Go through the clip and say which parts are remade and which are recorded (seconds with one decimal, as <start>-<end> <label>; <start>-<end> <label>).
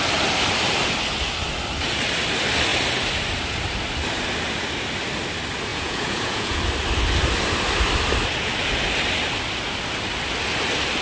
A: 0.0-5.7 recorded; 5.7-6.6 remade; 6.6-11.0 recorded